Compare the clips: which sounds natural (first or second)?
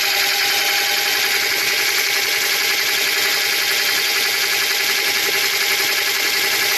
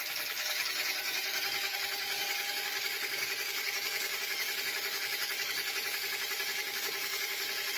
first